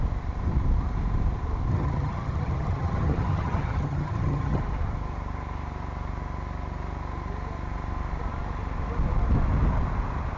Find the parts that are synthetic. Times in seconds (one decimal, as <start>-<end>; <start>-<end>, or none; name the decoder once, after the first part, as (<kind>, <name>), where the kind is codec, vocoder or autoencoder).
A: 1.7-4.6 (vocoder, HiFi-GAN)